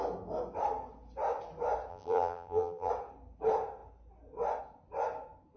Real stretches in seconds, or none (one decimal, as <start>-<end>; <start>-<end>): 0.0-1.9; 2.9-5.6